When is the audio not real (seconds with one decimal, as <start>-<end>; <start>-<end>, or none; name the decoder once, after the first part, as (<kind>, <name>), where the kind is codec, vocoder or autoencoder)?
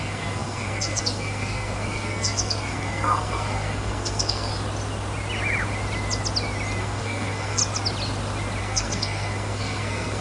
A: 0.0-4.5 (codec, SNAC); 6.8-7.6; 8.6-10.2